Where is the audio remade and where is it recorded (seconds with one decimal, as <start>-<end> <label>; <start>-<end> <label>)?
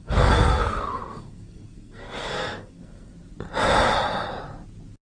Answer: 0.0-3.1 remade; 3.1-5.2 recorded